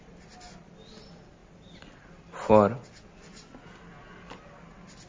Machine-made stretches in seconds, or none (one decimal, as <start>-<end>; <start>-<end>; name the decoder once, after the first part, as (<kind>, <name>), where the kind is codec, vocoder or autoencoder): none